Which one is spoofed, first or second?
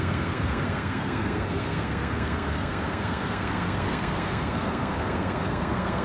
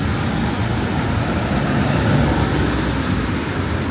first